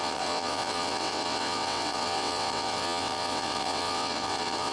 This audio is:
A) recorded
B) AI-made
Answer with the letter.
B